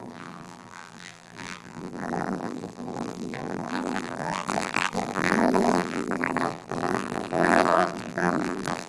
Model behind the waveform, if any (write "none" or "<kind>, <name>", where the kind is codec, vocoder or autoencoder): vocoder, BigVGAN v2